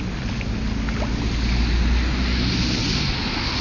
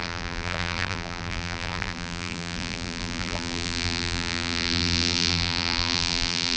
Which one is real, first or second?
first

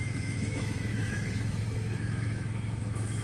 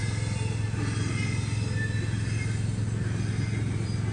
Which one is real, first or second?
second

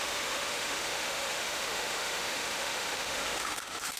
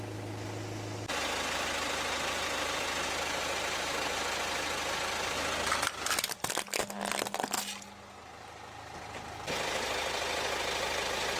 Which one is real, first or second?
second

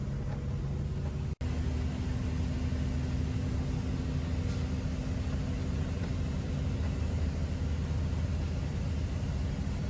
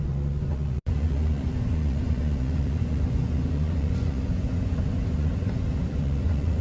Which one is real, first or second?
first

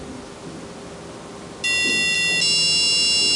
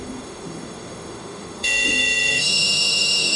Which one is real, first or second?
first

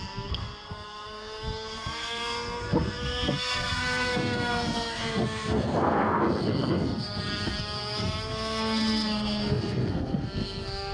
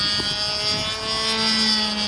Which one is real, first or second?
second